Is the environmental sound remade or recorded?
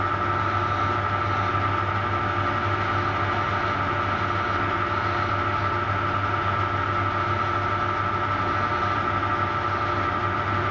recorded